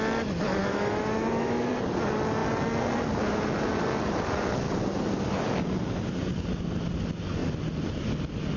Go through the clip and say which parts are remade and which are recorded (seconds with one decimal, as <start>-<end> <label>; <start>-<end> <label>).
0.0-0.6 recorded; 0.6-1.7 remade; 1.7-8.6 recorded